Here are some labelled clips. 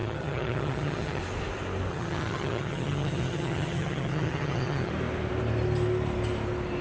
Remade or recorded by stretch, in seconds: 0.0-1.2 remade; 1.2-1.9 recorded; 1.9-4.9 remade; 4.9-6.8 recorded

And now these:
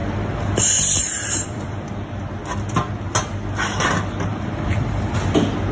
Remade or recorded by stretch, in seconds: 0.0-1.9 remade; 1.9-4.3 recorded; 4.3-5.2 remade; 5.2-5.7 recorded

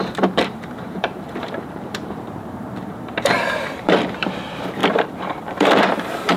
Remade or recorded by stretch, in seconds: 0.0-0.4 recorded; 0.4-4.2 remade; 4.2-4.8 recorded; 4.8-6.4 remade

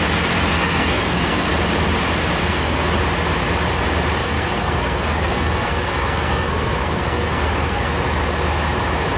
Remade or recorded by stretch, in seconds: 0.0-0.5 recorded; 0.5-1.5 remade; 1.5-2.4 recorded; 2.4-2.9 remade; 2.9-4.2 recorded; 4.2-7.9 remade; 7.9-9.2 recorded

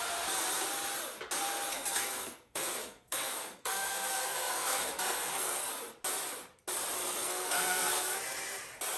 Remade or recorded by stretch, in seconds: 0.0-1.7 recorded; 1.7-5.7 remade; 5.7-7.0 recorded; 7.0-8.2 remade; 8.2-9.0 recorded